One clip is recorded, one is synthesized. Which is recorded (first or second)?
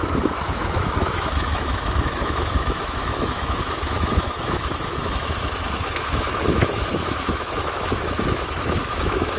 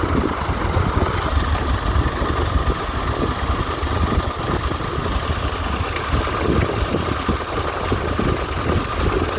second